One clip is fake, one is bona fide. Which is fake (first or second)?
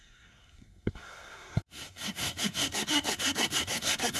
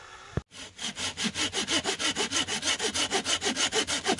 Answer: first